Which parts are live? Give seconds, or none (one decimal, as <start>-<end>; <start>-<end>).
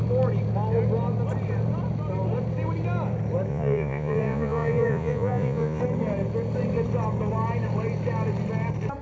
0.0-3.5; 5.8-9.0